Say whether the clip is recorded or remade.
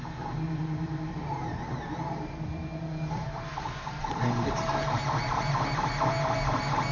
remade